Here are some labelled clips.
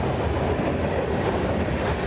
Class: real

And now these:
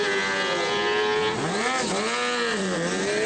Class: real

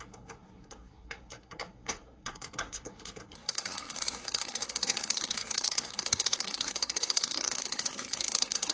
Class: fake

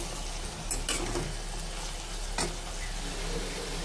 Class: real